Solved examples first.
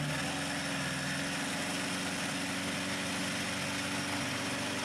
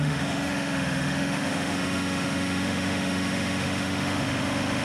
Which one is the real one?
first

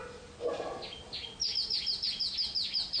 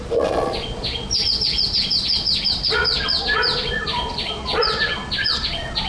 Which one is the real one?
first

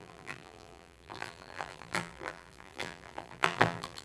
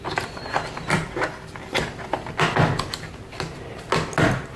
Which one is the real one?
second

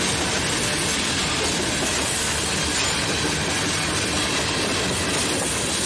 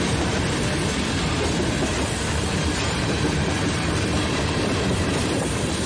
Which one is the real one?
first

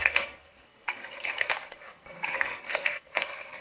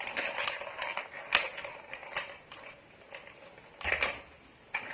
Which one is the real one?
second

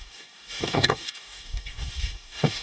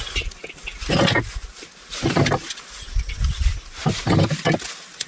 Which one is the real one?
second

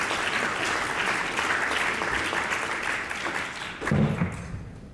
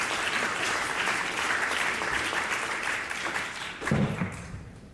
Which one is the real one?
first